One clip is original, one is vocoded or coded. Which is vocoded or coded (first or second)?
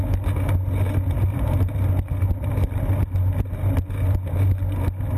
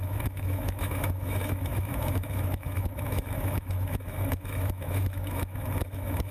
second